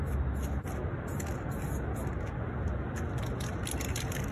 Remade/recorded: recorded